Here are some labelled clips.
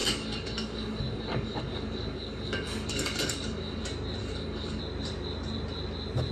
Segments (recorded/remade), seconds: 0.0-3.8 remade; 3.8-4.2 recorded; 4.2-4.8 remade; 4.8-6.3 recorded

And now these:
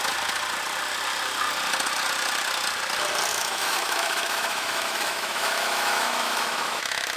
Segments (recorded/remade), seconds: 0.0-3.3 recorded; 3.3-7.2 remade